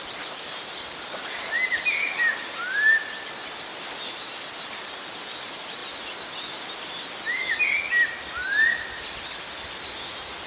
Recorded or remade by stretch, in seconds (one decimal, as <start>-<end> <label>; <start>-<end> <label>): 0.0-10.5 recorded